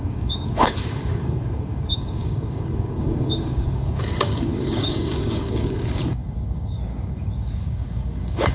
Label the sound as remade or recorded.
remade